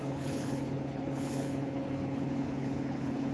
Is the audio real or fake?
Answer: fake